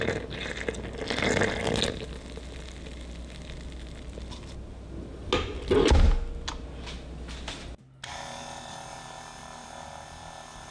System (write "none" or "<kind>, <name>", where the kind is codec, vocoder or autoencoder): none